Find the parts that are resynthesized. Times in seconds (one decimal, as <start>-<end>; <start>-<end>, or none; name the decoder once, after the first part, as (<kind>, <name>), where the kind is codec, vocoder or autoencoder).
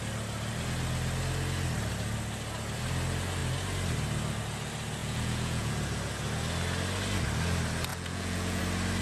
5.0-5.7 (vocoder, Vocos); 7.9-8.6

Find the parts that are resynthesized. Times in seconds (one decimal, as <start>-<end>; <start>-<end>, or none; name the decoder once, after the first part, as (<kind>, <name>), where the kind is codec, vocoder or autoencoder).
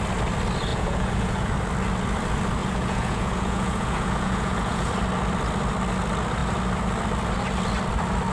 0.7-1.5 (vocoder, Vocos); 2.6-4.9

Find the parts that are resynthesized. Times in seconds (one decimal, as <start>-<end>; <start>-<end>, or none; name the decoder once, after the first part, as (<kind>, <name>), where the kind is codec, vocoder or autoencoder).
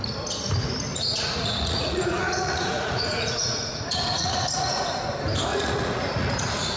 0.9-5.0 (vocoder, Vocos); 5.5-6.8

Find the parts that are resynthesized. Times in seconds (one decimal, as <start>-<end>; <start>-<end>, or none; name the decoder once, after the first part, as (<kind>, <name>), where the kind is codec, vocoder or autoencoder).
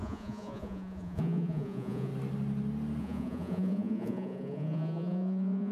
0.0-2.1 (vocoder, Vocos); 3.0-5.7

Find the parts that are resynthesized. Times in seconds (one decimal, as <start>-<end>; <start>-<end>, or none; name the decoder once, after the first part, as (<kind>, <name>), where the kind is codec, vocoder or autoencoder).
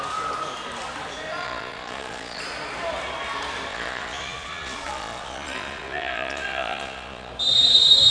1.4-2.4 (vocoder, Vocos); 3.7-7.3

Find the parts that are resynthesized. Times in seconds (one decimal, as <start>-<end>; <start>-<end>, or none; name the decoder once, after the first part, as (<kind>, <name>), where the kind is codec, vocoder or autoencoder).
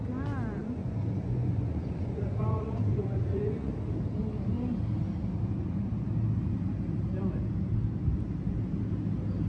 0.6-3.7 (vocoder, Vocos)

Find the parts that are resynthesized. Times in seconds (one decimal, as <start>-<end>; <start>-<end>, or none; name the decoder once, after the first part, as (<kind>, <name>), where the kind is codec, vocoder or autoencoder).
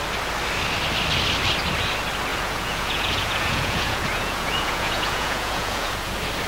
2.3-6.1 (vocoder, Vocos)